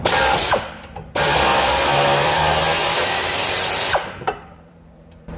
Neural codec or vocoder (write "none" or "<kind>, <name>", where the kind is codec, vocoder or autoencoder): vocoder, BigVGAN v2